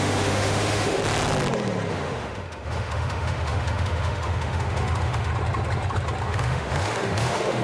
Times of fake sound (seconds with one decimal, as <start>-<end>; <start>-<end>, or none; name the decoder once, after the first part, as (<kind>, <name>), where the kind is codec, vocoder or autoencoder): 0.0-1.0 (autoencoder, DAC-VAE); 1.9-5.3; 6.2-7.6